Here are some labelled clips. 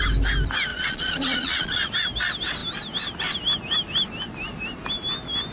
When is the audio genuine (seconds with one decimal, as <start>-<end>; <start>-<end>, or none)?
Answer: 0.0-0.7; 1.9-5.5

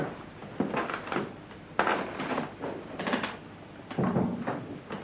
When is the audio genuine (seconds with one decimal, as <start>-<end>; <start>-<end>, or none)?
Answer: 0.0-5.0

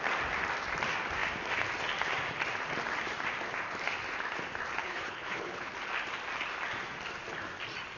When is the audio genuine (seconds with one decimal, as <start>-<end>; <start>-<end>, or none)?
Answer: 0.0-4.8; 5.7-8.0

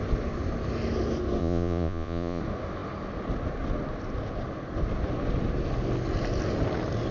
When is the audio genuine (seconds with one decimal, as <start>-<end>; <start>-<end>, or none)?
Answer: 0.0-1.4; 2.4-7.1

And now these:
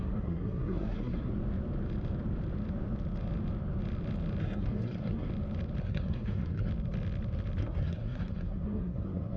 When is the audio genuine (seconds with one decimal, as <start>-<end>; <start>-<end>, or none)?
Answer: 1.3-4.4; 5.3-5.8; 6.7-7.6

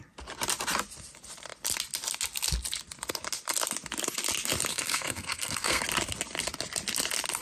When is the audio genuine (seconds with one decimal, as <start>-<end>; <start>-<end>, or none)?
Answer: 0.0-4.7; 5.8-7.4

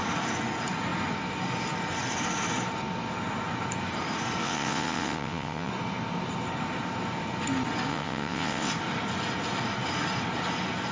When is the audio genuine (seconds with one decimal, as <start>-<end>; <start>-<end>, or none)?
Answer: 0.0-4.4; 5.7-7.9; 8.7-10.9